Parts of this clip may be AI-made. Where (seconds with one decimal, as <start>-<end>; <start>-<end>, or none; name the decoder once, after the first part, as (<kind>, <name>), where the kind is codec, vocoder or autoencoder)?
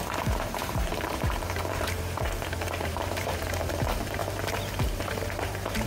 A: 0.0-4.2 (vocoder, BigVGAN v2); 5.0-5.9